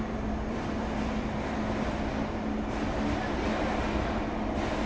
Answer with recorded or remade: recorded